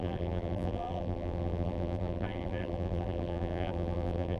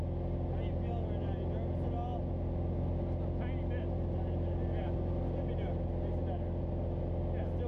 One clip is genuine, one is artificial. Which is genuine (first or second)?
second